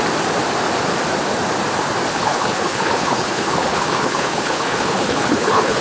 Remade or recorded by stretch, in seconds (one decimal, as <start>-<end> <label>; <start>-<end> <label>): 0.0-2.1 recorded; 2.1-5.8 remade